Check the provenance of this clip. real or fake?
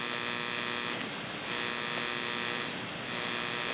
real